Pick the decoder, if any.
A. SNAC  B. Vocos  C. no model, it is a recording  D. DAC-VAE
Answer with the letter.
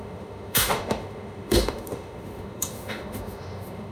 D